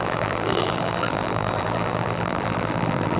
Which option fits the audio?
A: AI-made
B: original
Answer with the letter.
A